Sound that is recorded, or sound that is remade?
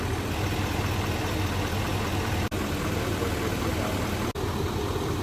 recorded